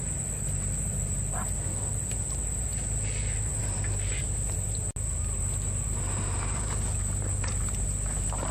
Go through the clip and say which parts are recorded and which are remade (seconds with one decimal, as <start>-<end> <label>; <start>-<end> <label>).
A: 0.0-3.6 recorded; 3.6-4.2 remade; 4.2-8.5 recorded